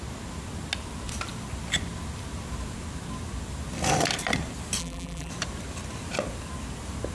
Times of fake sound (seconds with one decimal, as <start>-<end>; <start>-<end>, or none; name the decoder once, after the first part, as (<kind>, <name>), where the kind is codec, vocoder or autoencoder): 4.8-5.3 (vocoder, BigVGAN v2)